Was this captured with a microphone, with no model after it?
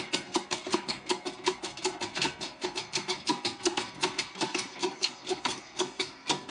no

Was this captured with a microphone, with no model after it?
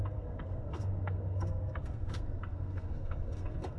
no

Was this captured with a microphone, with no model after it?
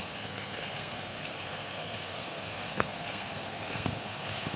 no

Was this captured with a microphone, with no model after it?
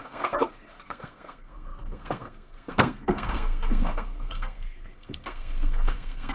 no